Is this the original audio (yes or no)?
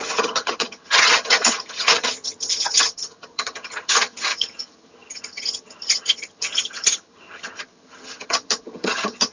no